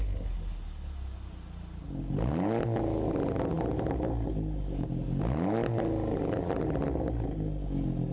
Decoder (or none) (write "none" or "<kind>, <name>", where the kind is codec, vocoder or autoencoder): none